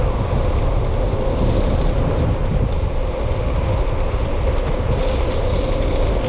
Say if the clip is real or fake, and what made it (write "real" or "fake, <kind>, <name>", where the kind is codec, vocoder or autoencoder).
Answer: real